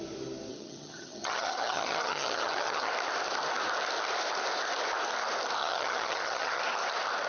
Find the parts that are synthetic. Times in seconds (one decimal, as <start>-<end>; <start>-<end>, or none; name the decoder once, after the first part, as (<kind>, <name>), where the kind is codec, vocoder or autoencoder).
0.5-2.9 (vocoder, HiFi-GAN); 5.6-6.6